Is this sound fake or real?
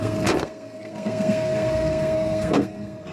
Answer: fake